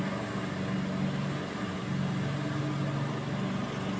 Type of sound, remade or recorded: recorded